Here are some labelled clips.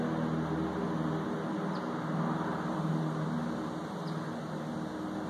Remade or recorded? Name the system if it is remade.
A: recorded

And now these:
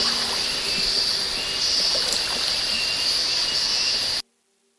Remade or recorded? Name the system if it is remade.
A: recorded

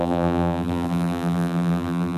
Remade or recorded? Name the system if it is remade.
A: remade, vocoder, BigVGAN v2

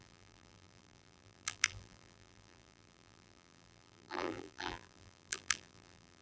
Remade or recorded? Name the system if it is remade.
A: remade, vocoder, BigVGAN v2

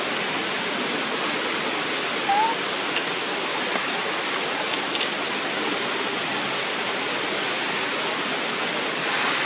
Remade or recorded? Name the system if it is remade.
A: recorded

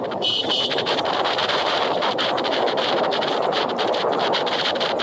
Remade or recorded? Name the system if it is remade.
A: remade, vocoder, BigVGAN v2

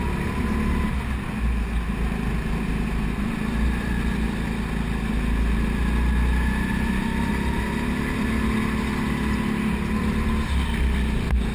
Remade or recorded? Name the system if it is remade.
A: recorded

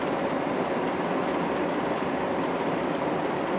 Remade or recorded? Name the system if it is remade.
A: recorded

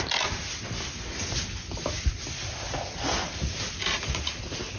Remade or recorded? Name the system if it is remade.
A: recorded